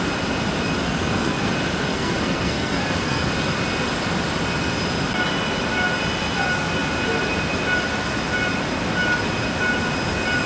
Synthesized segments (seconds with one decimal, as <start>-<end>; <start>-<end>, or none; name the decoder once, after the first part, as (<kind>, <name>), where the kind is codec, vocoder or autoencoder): 0.8-1.5 (codec, SNAC); 1.9-3.3